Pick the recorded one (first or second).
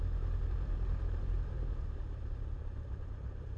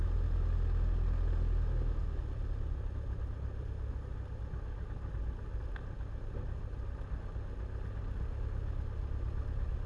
second